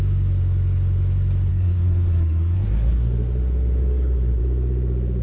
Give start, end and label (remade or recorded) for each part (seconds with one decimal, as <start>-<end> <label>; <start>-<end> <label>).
0.0-1.5 recorded; 1.5-4.4 remade; 4.4-5.2 recorded